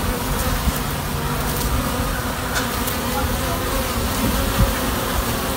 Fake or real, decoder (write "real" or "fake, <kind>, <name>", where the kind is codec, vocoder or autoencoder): real